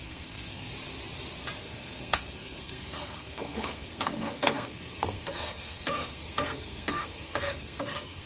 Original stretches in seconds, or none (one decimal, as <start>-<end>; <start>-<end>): 0.7-1.6